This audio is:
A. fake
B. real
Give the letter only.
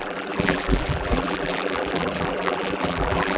A